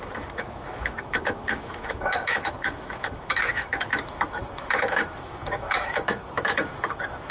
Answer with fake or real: fake